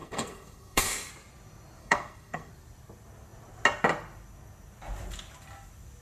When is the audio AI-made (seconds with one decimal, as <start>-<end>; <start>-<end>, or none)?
0.0-1.1; 1.8-2.5